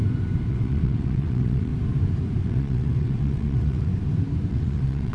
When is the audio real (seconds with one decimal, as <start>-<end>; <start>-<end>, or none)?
0.0-0.5; 1.7-2.4; 3.9-4.5